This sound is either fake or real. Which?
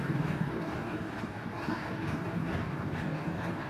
fake